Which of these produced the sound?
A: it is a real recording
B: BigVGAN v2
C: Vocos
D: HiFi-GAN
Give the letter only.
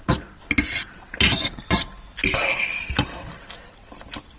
A